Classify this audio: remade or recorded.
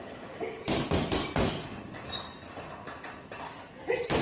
recorded